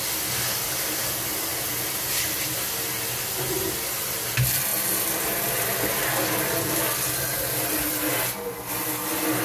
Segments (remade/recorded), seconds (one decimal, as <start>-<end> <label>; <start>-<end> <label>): 0.0-9.4 recorded